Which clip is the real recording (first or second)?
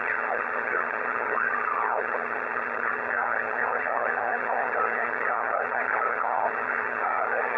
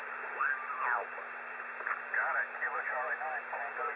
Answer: second